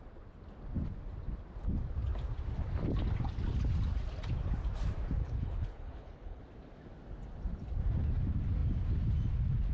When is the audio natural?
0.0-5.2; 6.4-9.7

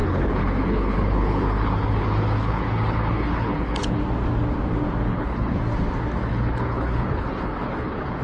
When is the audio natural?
4.0-5.1; 5.6-6.3

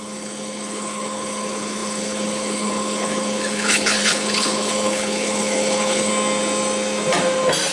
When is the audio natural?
6.1-7.7